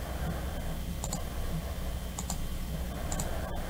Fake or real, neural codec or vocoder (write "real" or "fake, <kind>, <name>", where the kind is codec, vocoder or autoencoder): real